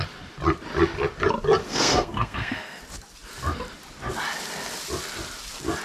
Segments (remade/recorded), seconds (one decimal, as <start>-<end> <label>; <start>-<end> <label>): 0.0-1.6 recorded; 1.6-2.8 remade; 2.8-5.8 recorded